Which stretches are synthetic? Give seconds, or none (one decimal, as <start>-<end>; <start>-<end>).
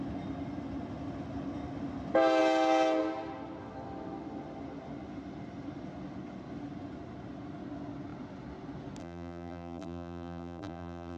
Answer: 9.0-11.2